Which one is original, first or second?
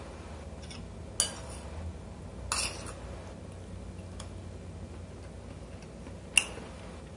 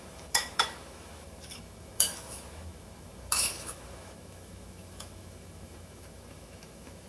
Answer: first